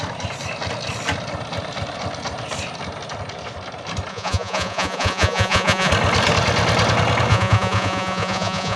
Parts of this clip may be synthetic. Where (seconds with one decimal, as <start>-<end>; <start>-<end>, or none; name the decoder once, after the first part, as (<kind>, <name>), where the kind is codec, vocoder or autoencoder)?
4.1-5.9 (vocoder, Vocos); 7.3-8.8